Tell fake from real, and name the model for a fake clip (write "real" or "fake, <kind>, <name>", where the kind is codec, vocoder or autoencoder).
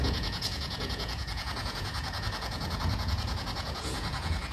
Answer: fake, vocoder, Vocos